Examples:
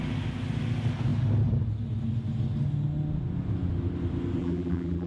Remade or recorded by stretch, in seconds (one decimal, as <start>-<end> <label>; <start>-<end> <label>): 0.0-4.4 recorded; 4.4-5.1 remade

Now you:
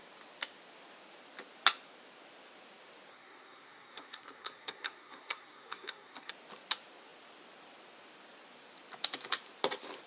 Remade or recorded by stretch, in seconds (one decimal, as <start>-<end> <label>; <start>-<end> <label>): 0.0-3.1 recorded; 3.1-6.3 remade; 6.3-10.1 recorded

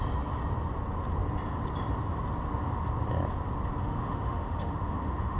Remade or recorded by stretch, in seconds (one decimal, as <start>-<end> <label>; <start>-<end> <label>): 0.0-3.8 recorded; 3.8-5.4 remade